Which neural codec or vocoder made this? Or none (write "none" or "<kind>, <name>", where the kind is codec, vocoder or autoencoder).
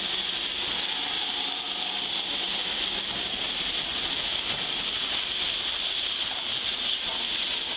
none